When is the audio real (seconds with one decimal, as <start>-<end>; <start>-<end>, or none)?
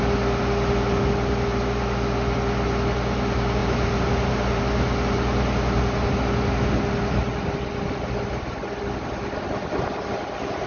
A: 0.0-3.6; 4.6-10.7